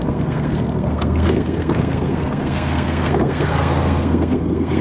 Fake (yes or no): yes